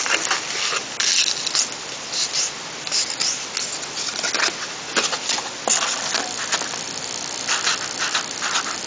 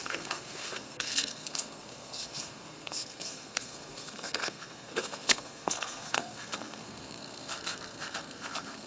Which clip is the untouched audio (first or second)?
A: first